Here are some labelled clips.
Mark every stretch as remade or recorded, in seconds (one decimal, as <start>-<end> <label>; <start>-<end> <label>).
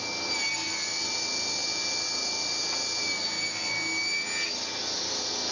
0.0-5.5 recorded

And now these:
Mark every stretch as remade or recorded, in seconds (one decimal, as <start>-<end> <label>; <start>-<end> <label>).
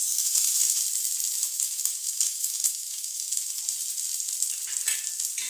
0.0-0.8 remade; 0.8-1.4 recorded; 1.4-3.6 remade; 3.6-5.5 recorded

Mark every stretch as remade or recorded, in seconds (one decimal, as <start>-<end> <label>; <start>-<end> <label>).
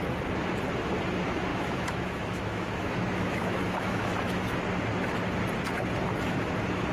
0.0-1.5 recorded; 1.5-4.6 remade; 4.6-6.9 recorded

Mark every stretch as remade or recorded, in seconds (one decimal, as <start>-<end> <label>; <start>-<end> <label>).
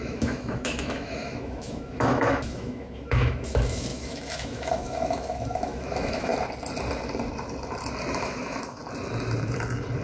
0.0-6.3 remade; 6.3-8.2 recorded; 8.2-8.8 remade; 8.8-10.0 recorded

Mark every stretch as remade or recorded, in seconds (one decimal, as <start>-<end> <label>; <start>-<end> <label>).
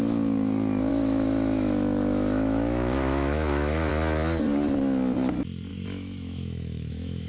0.0-0.9 recorded; 0.9-3.9 remade; 3.9-5.7 recorded; 5.7-7.3 remade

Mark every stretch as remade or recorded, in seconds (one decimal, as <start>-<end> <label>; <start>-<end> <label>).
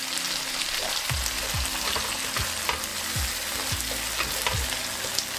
0.0-5.4 recorded